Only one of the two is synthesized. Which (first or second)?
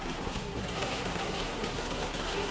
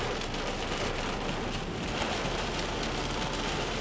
first